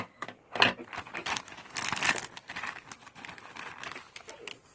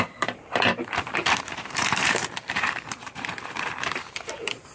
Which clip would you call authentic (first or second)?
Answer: first